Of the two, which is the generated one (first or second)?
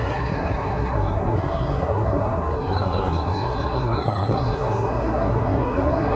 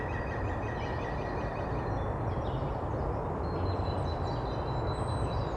first